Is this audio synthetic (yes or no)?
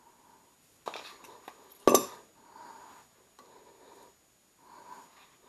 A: no